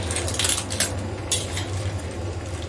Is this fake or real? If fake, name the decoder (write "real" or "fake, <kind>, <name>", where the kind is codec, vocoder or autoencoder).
real